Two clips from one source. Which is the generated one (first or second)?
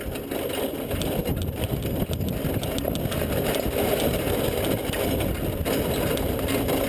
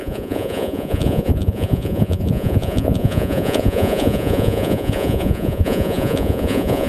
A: second